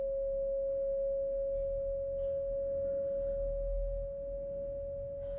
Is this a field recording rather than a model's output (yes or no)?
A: yes